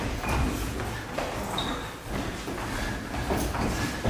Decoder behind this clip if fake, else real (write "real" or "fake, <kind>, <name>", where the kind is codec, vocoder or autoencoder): real